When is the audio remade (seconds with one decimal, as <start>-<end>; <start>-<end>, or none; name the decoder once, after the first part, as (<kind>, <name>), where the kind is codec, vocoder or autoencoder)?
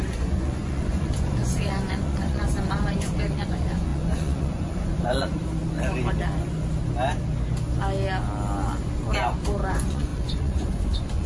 0.0-5.4 (vocoder, Vocos); 9.7-11.3